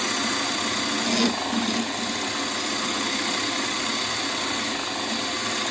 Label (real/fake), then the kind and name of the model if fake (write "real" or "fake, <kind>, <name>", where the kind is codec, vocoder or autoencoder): real